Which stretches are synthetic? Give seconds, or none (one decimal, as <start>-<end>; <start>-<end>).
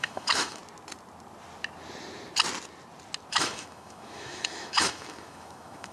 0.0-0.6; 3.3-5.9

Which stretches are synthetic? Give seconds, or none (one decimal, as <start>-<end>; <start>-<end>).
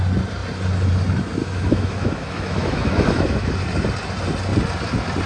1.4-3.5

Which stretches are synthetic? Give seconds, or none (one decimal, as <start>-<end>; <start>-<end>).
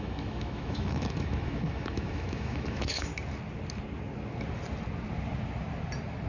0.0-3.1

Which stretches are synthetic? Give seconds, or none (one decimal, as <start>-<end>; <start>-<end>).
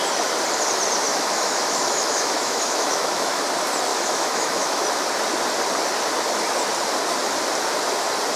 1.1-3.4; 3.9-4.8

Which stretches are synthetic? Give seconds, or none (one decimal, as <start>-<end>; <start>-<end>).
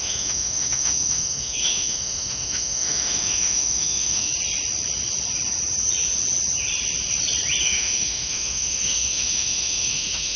0.0-4.3; 7.6-10.4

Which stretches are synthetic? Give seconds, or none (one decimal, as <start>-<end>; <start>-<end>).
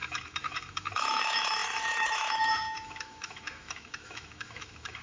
0.0-5.0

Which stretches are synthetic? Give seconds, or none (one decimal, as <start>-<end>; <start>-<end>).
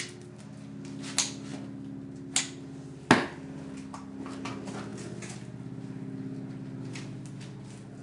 none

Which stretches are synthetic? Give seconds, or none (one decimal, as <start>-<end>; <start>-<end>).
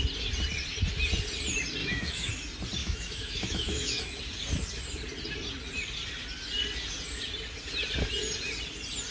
1.8-2.3; 2.8-4.2